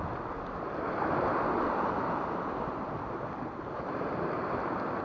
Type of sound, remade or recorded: recorded